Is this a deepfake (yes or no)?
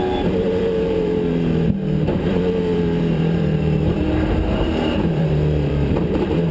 yes